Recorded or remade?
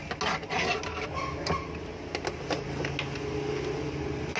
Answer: recorded